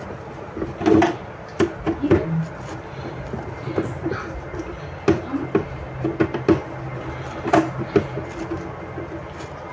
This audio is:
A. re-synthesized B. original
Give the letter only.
B